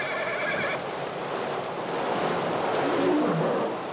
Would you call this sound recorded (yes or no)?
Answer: yes